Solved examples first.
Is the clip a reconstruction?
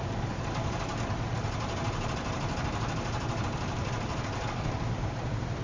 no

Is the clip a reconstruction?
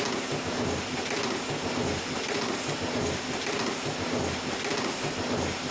no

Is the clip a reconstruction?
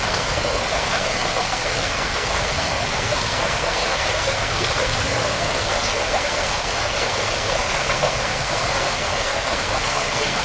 yes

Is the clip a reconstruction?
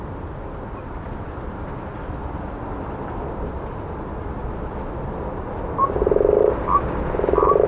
no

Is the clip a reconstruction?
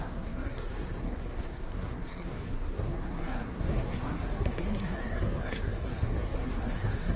yes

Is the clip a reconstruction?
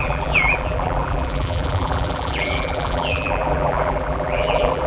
yes